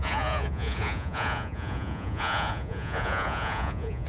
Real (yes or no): no